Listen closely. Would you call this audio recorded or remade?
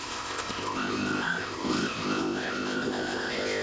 remade